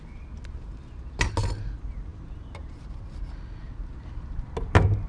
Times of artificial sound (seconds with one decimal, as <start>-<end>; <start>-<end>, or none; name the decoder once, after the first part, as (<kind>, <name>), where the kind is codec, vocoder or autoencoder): none